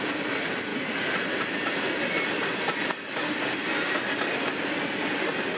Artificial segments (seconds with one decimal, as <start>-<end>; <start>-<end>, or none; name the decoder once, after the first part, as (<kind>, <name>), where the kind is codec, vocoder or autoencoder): none